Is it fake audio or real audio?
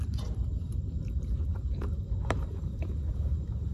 fake